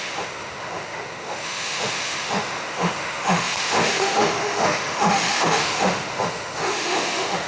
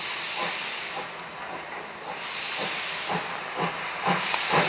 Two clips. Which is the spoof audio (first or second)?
first